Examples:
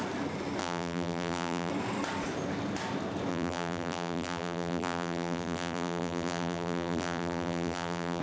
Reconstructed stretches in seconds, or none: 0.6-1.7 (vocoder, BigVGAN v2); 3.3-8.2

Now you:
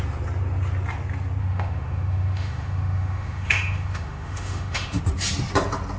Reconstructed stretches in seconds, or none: 1.4-5.0 (autoencoder, DAC-VAE)

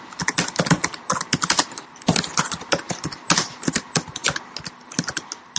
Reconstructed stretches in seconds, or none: none

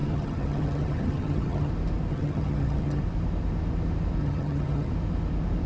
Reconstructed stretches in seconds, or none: 0.0-1.7 (vocoder, HiFi-GAN); 2.1-3.0; 4.2-4.9